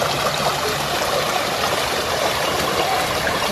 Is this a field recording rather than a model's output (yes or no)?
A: no